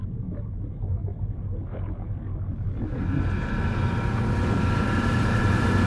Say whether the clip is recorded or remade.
recorded